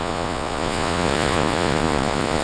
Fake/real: fake